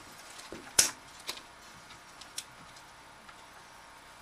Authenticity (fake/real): fake